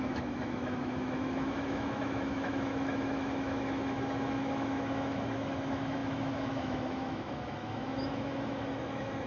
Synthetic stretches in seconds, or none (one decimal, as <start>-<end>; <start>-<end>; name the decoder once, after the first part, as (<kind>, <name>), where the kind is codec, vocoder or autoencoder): 0.0-9.3 (autoencoder, DAC-VAE)

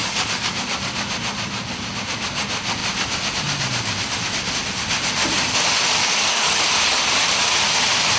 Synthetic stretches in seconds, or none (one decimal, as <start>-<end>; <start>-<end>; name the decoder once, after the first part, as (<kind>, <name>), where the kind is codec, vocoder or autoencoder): 0.0-0.6 (codec, DAC); 6.0-6.6

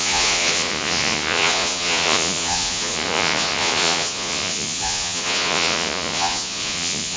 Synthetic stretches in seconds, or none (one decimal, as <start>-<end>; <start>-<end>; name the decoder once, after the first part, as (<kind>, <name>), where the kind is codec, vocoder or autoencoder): 0.0-7.2 (vocoder, Vocos)